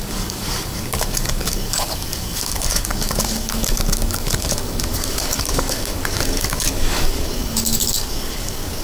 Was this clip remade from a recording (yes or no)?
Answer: yes